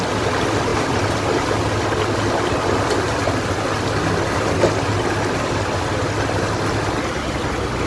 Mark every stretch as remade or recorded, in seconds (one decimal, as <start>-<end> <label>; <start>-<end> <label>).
0.0-7.9 recorded

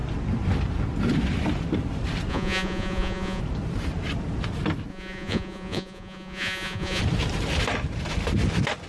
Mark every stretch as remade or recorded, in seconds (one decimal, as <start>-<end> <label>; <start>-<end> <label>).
0.0-2.3 recorded; 2.3-3.4 remade; 3.4-4.9 recorded; 4.9-7.0 remade; 7.0-8.9 recorded

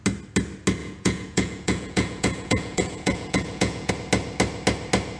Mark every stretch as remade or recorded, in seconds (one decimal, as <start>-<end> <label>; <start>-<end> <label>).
0.0-0.8 recorded; 0.8-3.9 remade; 3.9-5.2 recorded

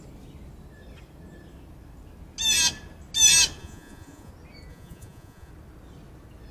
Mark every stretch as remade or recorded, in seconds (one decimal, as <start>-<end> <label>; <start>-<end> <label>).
0.0-3.6 recorded; 3.6-4.3 remade; 4.3-4.7 recorded; 4.7-5.5 remade; 5.5-6.5 recorded

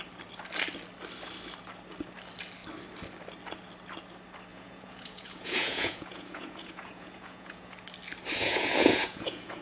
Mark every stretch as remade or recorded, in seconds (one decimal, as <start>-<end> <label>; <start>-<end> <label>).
0.0-4.5 recorded; 4.5-7.7 remade; 7.7-8.4 recorded; 8.4-9.6 remade